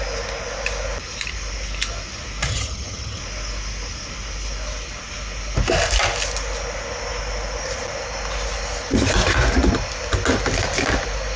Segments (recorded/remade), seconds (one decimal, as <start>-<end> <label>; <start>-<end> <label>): 0.0-2.5 recorded; 2.5-3.2 remade; 3.2-11.4 recorded